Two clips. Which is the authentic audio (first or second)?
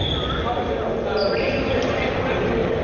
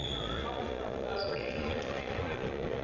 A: first